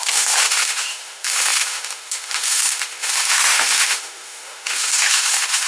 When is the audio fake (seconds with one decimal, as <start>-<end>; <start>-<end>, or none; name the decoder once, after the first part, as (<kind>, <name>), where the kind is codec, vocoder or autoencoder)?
0.0-5.7 (autoencoder, DAC-VAE)